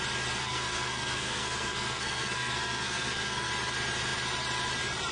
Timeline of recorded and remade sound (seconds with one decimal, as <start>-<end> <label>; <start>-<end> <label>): 0.0-0.4 recorded; 0.4-3.5 remade; 3.5-5.1 recorded

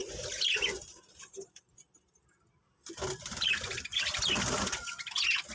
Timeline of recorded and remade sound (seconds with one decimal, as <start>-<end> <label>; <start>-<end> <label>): 0.0-2.1 remade; 2.1-5.5 recorded

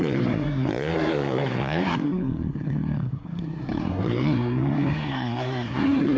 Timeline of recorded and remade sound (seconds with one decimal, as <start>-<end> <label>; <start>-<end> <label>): 0.0-6.2 remade

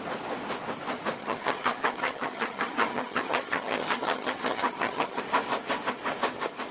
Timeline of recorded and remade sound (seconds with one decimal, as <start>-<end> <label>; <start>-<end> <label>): 0.0-1.2 recorded; 1.2-5.2 remade; 5.2-6.7 recorded

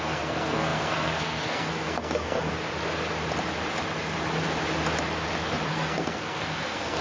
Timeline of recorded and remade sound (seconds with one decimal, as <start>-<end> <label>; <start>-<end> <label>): 0.0-2.5 remade; 2.5-5.7 recorded; 5.7-7.0 remade

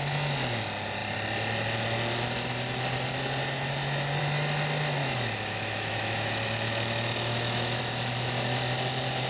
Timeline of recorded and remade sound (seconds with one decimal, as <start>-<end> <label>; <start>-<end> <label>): 0.0-5.0 recorded; 5.0-7.8 remade; 7.8-9.3 recorded

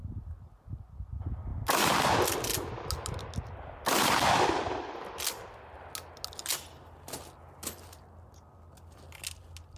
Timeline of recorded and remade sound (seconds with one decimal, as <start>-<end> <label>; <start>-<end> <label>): 0.0-9.8 recorded

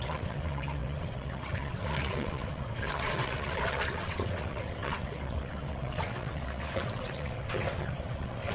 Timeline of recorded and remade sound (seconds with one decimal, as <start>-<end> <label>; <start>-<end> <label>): 0.0-8.5 remade